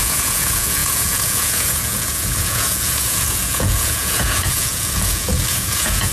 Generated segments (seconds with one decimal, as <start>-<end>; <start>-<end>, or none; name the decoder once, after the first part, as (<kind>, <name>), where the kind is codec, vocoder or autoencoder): 0.0-6.1 (vocoder, Vocos)